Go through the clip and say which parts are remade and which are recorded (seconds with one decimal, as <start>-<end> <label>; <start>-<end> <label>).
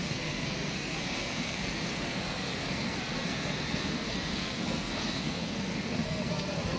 0.0-6.8 remade